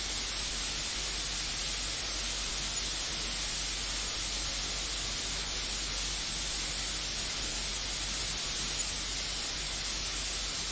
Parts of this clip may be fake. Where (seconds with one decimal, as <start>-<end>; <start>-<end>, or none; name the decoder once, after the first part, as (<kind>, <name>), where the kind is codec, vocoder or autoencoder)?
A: none